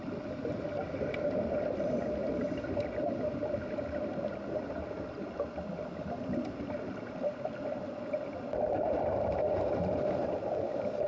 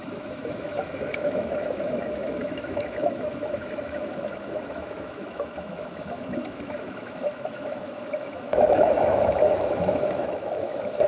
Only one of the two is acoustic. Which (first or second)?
first